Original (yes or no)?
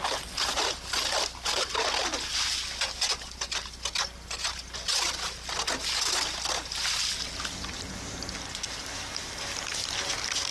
yes